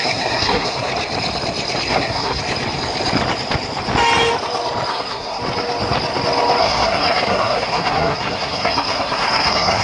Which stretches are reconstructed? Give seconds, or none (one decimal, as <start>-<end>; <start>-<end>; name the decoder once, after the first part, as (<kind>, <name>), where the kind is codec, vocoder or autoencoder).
0.0-0.9 (codec, SNAC); 1.9-2.4; 4.9-5.4; 6.6-9.8